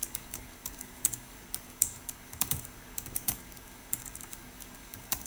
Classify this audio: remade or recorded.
remade